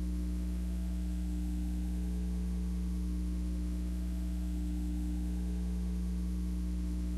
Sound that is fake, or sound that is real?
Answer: fake